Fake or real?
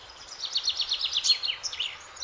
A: real